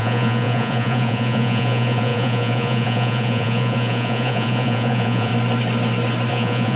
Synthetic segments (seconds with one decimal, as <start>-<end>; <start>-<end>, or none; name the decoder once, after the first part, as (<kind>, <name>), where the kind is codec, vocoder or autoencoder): 0.0-5.3 (vocoder, Vocos); 6.3-6.8